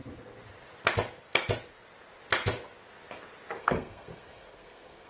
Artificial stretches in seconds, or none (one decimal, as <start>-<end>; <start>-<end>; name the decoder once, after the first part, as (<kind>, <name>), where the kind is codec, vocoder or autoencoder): 3.6-5.1 (codec, SNAC)